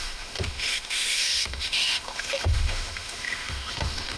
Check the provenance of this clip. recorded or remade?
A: remade